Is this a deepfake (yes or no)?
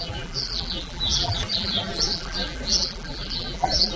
yes